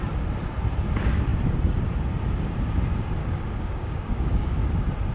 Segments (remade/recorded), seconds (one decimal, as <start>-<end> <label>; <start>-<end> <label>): 0.0-3.2 recorded; 3.2-4.6 remade; 4.6-5.1 recorded